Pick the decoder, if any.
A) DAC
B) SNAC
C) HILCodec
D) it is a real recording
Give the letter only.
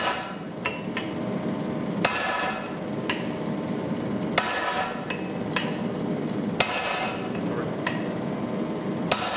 D